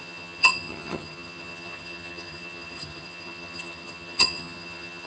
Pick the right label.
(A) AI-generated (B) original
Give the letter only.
A